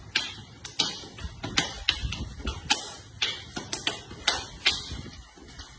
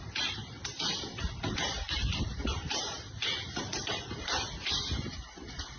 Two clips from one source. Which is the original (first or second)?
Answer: first